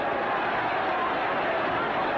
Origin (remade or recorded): recorded